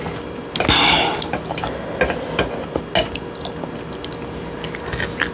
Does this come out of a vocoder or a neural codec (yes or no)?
no